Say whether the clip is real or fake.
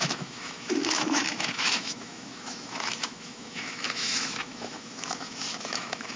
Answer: fake